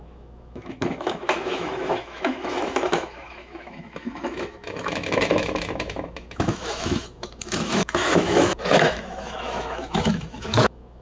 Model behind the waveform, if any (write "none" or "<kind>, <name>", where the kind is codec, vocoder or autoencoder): autoencoder, DAC-VAE